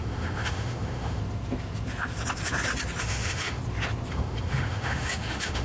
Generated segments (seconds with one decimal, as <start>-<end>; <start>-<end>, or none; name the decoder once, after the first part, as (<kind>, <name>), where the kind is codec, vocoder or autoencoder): 0.0-1.2 (autoencoder, DAC-VAE); 3.0-3.6; 4.1-5.6